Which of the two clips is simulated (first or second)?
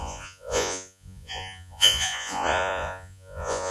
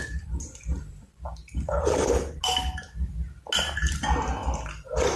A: first